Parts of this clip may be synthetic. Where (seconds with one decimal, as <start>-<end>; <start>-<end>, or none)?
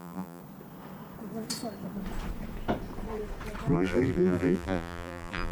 0.0-0.4; 3.7-5.5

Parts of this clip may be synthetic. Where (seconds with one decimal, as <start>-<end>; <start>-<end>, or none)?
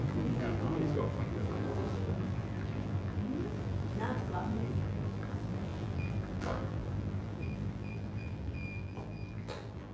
0.0-9.9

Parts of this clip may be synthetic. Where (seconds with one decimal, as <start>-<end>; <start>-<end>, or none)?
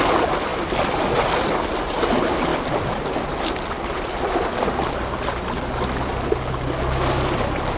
2.5-5.4